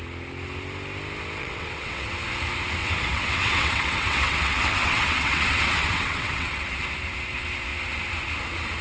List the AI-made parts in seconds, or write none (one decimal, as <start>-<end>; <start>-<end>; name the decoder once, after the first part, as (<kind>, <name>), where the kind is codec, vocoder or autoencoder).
1.4-2.1 (vocoder, WaveNeXt); 2.8-6.8